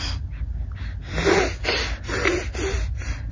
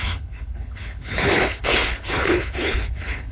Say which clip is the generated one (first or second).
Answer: second